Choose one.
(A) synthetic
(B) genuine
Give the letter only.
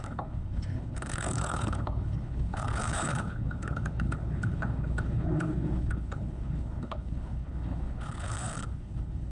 A